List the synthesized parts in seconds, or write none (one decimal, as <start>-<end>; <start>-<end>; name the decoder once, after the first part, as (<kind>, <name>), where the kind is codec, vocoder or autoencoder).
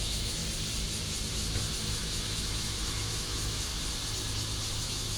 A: 0.0-0.4 (autoencoder, DAC-VAE); 1.7-3.7; 4.8-5.2